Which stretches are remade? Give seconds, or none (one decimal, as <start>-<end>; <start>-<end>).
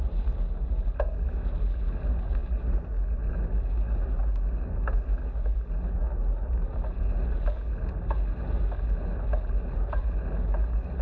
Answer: none